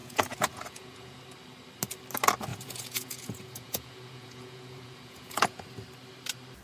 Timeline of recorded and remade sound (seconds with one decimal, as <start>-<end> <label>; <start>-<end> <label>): 0.0-1.2 remade; 1.2-2.5 recorded; 2.5-5.6 remade; 5.6-6.6 recorded